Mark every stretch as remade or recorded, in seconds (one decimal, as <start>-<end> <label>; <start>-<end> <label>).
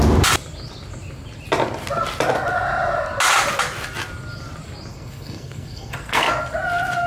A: 0.0-4.9 recorded; 4.9-6.3 remade; 6.3-7.1 recorded